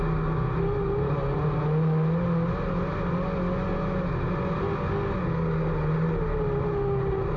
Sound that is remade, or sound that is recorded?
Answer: recorded